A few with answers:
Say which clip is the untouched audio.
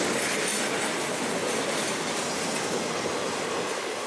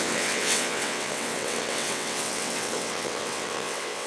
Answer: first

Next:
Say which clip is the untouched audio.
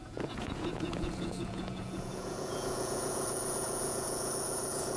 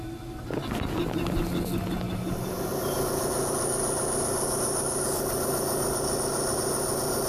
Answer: second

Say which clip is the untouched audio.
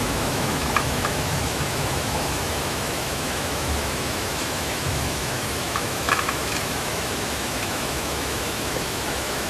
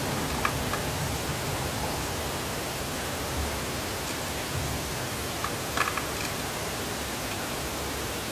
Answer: second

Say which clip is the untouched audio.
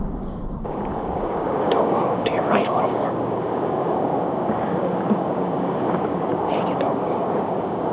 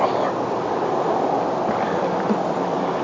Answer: second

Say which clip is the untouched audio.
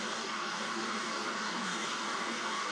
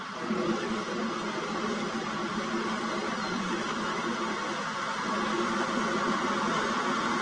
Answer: second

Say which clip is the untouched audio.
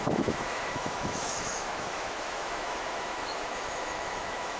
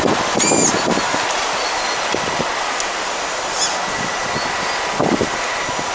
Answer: second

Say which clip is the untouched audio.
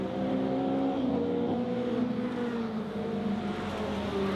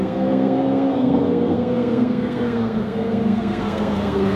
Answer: first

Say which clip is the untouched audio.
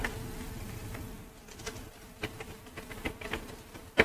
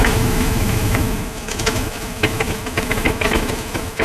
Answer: first